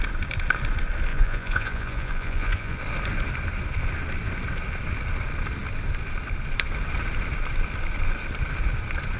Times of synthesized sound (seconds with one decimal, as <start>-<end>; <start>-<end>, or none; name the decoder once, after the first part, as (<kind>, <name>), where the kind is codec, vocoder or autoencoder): 1.1-2.8 (vocoder, Vocos)